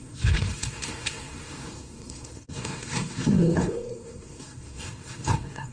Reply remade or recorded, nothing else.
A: remade